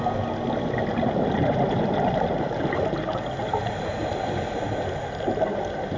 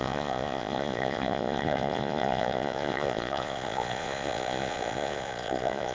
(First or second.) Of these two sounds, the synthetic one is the second